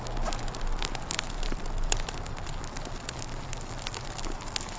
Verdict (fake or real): real